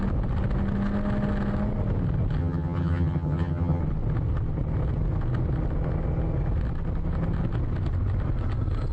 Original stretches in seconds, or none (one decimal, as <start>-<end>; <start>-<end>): 0.0-2.4; 3.8-8.9